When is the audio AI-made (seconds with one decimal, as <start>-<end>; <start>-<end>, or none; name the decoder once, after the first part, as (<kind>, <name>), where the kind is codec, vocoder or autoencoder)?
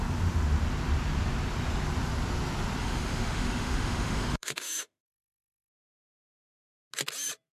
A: 2.8-5.7 (autoencoder, DAC-VAE)